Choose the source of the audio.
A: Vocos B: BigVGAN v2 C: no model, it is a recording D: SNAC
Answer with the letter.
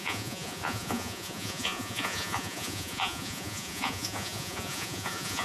A